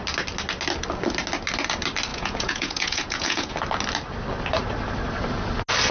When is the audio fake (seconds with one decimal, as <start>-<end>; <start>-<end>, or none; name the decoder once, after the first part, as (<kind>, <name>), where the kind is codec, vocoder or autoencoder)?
2.1-3.5 (vocoder, Vocos)